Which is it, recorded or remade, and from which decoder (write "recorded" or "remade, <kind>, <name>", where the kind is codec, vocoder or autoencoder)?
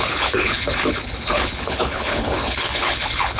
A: remade, codec, HILCodec